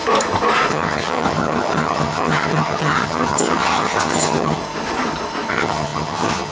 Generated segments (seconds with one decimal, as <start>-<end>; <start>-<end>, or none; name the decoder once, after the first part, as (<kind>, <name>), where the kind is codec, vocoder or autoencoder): 0.7-4.6 (vocoder, HiFi-GAN); 5.5-6.5